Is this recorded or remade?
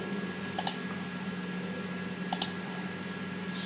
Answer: recorded